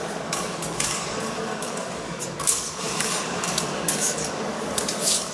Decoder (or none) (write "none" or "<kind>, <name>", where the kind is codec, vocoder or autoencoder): codec, DAC